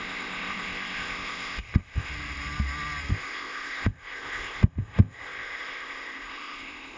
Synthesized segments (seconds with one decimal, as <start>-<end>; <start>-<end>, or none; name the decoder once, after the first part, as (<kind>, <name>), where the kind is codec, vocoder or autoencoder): 0.0-2.1 (codec, ZipCodec); 3.1-7.0